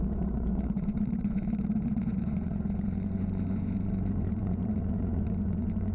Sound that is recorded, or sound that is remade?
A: remade